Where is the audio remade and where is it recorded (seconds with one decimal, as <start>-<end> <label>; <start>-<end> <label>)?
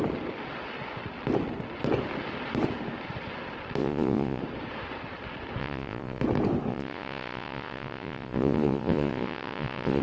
0.0-3.8 recorded; 3.8-4.4 remade; 4.4-5.6 recorded; 5.6-6.2 remade; 6.2-6.7 recorded; 6.7-10.0 remade